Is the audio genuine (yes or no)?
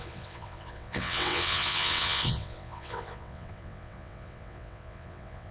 no